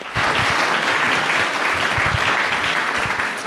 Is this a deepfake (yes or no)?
yes